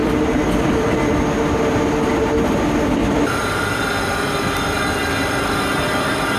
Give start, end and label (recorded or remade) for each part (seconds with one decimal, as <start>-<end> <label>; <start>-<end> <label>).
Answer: 0.0-1.3 remade; 1.3-3.0 recorded; 3.0-6.4 remade